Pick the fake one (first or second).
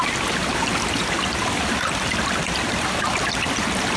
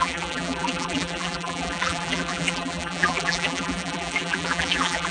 second